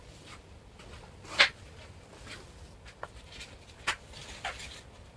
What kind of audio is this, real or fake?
real